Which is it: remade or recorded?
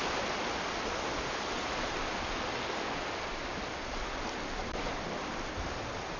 recorded